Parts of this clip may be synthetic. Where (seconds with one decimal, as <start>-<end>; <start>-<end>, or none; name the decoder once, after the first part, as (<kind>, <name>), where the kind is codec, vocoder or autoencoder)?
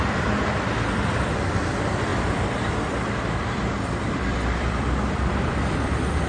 0.0-6.3 (vocoder, BigVGAN v2)